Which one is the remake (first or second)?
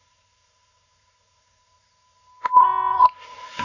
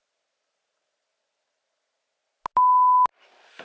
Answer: first